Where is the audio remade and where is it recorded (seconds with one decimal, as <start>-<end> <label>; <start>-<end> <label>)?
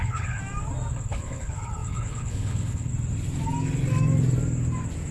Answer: 0.0-0.4 remade; 0.4-0.9 recorded; 0.9-2.9 remade; 2.9-5.1 recorded